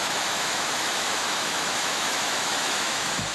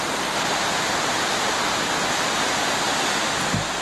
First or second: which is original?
second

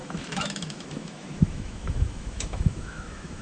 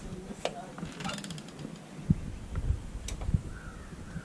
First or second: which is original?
second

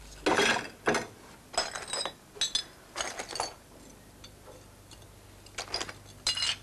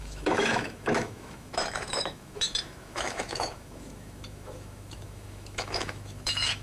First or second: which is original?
first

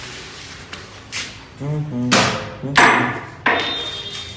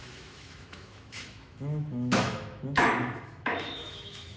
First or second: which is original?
first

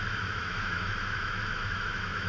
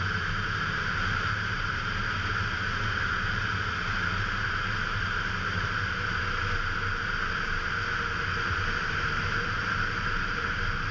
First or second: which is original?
second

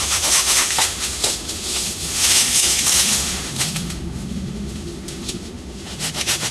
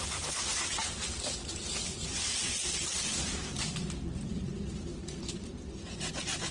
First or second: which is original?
second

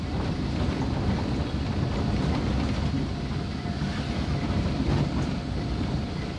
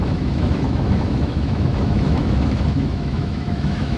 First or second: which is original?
first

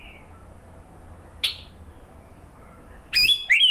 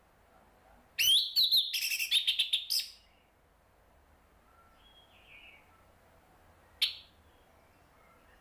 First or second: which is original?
second